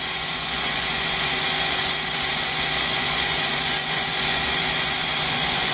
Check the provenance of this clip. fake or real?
fake